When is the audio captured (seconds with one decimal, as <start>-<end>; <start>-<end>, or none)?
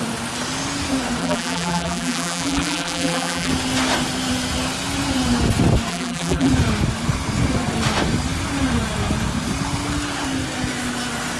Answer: 0.0-1.2; 3.5-5.9; 6.5-11.4